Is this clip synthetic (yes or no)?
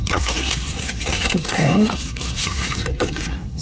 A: yes